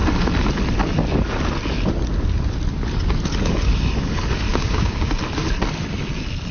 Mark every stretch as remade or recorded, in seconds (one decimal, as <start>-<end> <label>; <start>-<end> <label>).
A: 0.0-4.5 recorded; 4.5-5.1 remade; 5.1-6.5 recorded